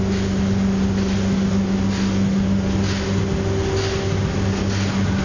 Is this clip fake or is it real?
real